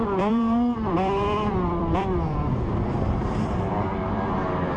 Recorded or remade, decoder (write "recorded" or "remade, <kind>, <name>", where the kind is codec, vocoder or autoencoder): remade, vocoder, BigVGAN v2